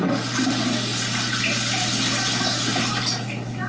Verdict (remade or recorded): recorded